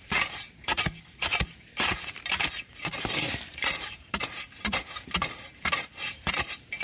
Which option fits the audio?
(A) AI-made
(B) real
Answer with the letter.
A